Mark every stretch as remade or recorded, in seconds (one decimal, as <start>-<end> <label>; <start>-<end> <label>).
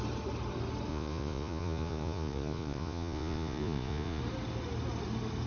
0.0-0.9 recorded; 0.9-4.2 remade; 4.2-5.5 recorded